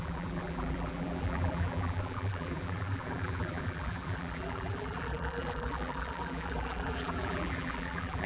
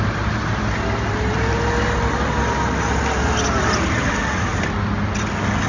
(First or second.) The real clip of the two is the second